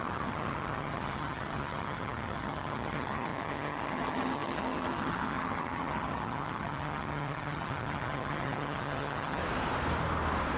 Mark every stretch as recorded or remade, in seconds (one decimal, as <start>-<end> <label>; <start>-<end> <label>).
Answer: 0.0-9.4 remade; 9.4-10.6 recorded